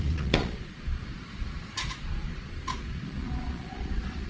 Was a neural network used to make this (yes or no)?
yes